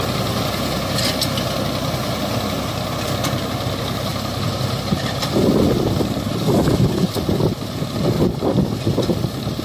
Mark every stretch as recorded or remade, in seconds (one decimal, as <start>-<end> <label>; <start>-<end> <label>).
0.0-4.1 recorded; 4.1-6.4 remade; 6.4-9.6 recorded